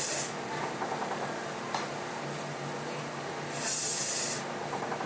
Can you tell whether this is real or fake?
real